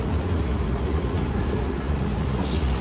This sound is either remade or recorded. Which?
remade